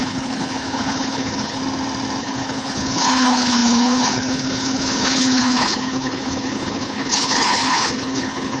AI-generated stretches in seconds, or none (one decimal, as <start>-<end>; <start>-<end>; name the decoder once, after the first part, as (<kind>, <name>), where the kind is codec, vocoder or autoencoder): 0.0-1.6 (codec, HILCodec); 2.2-8.6